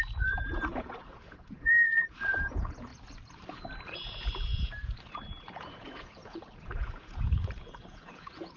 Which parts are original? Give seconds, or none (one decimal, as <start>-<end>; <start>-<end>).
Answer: 2.9-3.5